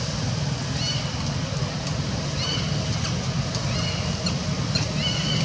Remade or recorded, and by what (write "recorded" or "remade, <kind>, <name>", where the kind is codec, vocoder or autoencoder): recorded